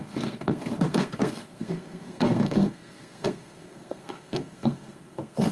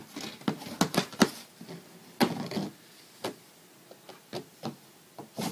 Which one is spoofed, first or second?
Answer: first